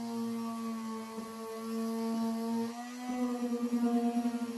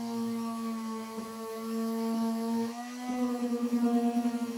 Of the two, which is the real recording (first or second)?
first